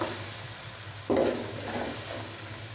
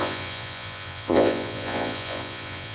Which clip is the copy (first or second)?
second